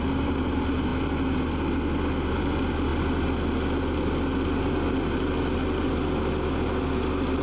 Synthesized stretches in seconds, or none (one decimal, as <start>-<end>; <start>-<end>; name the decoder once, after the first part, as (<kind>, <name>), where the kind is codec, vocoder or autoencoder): none

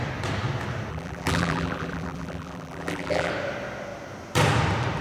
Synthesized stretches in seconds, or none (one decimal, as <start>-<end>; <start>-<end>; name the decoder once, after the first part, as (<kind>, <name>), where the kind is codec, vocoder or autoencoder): 0.9-3.3 (vocoder, BigVGAN v2)